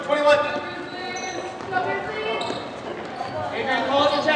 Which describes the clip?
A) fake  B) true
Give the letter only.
B